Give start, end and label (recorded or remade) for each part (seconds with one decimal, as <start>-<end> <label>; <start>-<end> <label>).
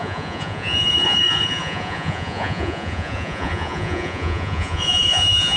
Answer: 0.0-5.6 remade